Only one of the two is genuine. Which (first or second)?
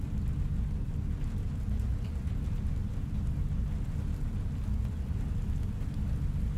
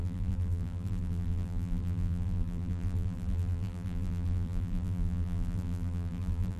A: first